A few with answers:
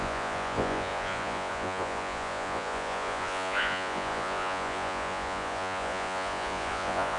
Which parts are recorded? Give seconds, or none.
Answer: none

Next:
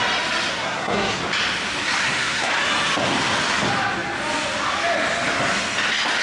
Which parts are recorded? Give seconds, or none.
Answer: 0.0-0.5; 1.2-2.0; 2.5-6.2

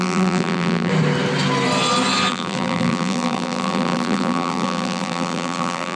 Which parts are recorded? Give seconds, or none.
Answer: 0.9-2.3